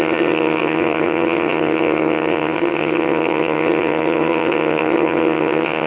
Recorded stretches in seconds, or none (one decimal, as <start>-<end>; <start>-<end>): none